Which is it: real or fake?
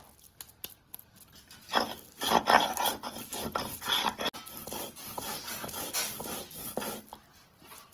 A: real